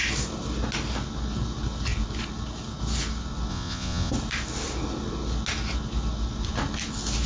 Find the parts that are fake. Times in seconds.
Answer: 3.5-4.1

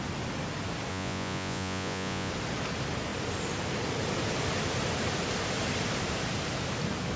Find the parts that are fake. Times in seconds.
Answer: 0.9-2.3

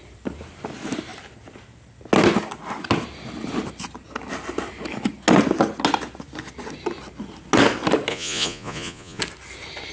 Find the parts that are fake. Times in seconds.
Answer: 8.1-9.2

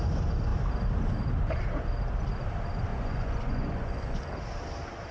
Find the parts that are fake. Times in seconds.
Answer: 2.9-4.2

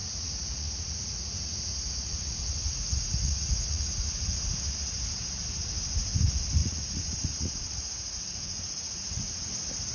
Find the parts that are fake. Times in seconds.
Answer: 0.0-4.4; 6.6-9.5

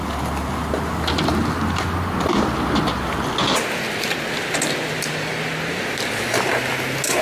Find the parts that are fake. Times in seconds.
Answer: none

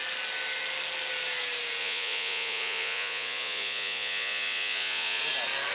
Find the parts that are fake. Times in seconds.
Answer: 1.8-5.2

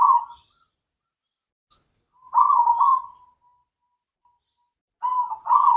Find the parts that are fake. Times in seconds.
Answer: none